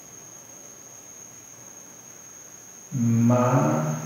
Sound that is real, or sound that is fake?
fake